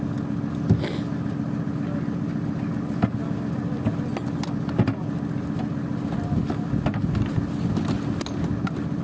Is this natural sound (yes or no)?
yes